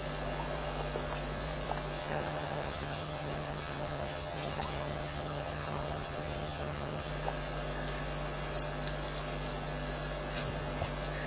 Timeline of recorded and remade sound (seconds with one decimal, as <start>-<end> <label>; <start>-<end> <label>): 0.0-2.0 recorded; 2.0-7.1 remade; 7.1-11.3 recorded